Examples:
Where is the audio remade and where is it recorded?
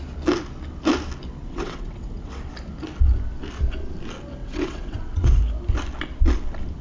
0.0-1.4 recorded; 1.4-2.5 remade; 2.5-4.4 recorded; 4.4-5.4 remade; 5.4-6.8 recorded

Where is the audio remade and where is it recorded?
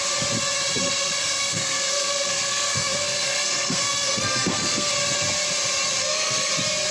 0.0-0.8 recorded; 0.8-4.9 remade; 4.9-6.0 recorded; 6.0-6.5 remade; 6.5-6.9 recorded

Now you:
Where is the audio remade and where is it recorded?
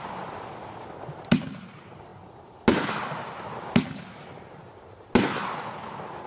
0.0-6.3 recorded